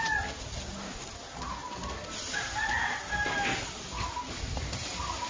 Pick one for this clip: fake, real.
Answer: real